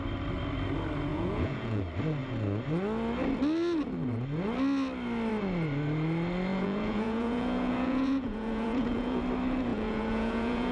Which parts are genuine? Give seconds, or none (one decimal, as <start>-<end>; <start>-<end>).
0.0-1.1; 1.8-6.5; 9.2-9.7